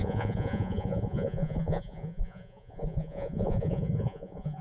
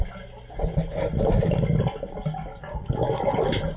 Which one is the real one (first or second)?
second